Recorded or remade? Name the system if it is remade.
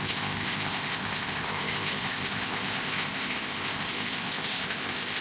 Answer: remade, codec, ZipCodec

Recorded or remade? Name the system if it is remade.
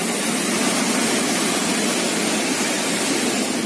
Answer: recorded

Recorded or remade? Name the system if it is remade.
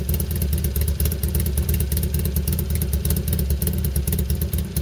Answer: recorded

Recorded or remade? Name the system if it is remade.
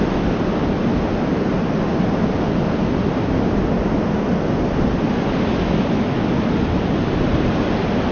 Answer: recorded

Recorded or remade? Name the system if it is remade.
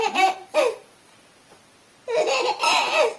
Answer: recorded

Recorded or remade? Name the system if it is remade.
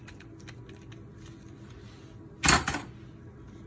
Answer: recorded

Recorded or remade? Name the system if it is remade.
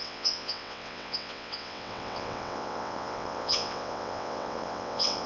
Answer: remade, vocoder, WaveNeXt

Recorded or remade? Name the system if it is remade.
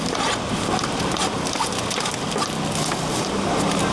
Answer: recorded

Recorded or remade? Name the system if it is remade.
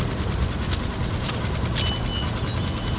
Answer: recorded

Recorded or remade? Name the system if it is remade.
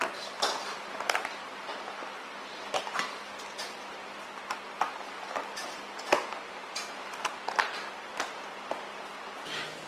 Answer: recorded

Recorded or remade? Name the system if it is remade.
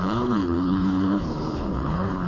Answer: remade, codec, HILCodec